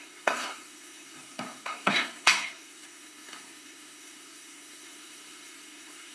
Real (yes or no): no